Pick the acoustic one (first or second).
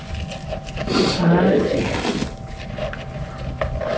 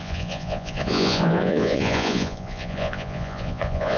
first